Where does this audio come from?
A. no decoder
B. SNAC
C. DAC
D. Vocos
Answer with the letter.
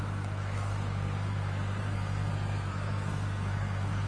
B